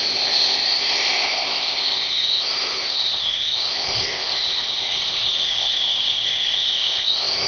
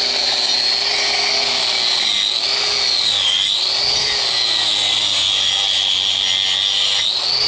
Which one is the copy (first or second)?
first